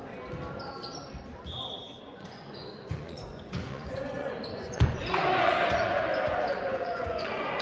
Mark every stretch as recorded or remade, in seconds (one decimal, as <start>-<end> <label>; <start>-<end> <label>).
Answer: 0.0-2.0 recorded; 2.0-7.6 remade